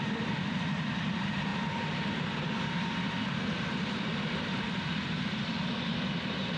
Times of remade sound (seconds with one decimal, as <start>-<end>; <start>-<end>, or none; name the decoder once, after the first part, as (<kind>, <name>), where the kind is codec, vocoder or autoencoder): 0.0-6.6 (vocoder, BigVGAN v2)